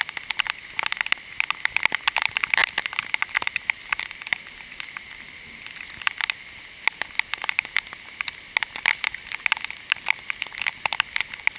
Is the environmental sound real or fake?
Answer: real